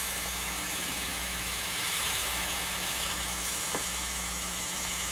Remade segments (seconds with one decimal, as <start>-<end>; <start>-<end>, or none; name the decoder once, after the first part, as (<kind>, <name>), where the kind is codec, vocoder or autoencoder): 0.0-5.1 (autoencoder, DAC-VAE)